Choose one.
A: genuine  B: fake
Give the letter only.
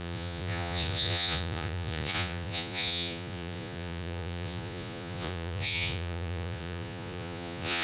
B